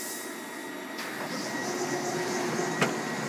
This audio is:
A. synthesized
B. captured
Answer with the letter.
B